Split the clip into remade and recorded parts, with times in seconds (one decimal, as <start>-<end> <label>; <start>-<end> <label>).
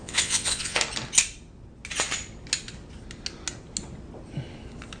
0.0-0.8 remade; 0.8-5.0 recorded